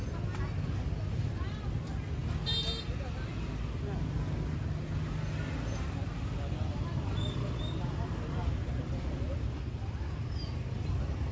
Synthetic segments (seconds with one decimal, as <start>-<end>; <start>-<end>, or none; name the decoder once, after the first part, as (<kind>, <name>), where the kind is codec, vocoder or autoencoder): none